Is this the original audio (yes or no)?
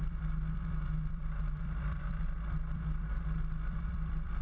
no